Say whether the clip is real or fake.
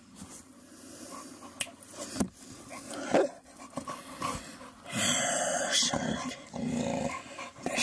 real